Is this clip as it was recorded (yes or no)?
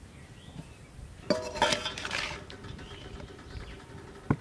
yes